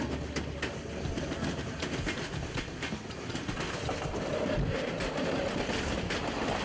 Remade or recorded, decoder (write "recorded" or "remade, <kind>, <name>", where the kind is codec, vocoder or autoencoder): recorded